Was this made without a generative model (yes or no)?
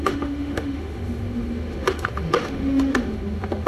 no